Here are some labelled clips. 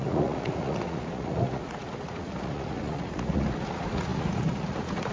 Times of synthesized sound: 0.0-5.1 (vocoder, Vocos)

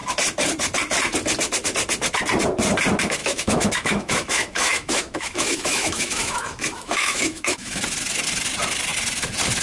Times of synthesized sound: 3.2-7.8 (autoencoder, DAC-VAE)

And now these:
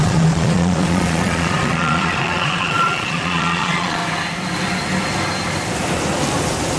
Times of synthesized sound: 0.0-4.0 (vocoder, Vocos)

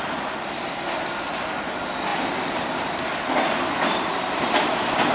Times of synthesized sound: 0.0-5.1 (vocoder, BigVGAN v2)

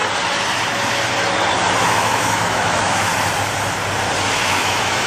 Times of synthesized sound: 1.8-3.1 (autoencoder, DAC-VAE); 4.3-5.1

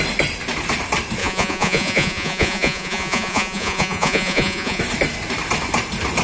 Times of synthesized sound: 1.2-4.8 (vocoder, Vocos)